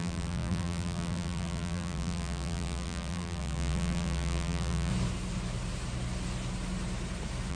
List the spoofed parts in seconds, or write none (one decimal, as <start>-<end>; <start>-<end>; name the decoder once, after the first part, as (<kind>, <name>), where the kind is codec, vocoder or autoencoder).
0.0-4.9 (vocoder, BigVGAN v2)